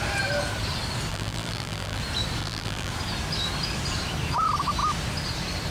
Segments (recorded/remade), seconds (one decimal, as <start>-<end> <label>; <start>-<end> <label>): 0.0-1.1 recorded; 1.1-2.0 remade; 2.0-2.4 recorded; 2.4-2.9 remade; 2.9-5.7 recorded